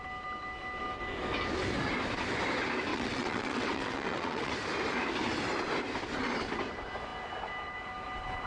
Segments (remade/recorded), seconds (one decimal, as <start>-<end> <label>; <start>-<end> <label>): 0.0-2.9 recorded; 2.9-4.5 remade; 4.5-8.5 recorded